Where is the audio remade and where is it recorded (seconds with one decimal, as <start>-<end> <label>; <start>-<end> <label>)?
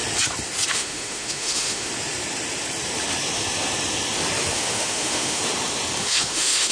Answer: 0.0-0.7 recorded; 0.7-1.9 remade; 1.9-4.5 recorded; 4.5-5.4 remade; 5.4-6.0 recorded; 6.0-6.7 remade